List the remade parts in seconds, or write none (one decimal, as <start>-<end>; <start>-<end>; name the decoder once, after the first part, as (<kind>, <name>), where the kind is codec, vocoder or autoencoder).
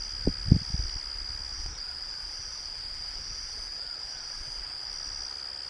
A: 1.5-4.9 (vocoder, Vocos)